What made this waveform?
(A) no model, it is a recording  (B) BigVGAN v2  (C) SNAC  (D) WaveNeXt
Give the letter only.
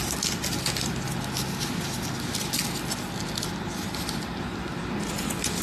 A